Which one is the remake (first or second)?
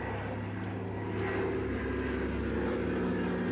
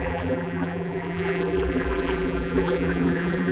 second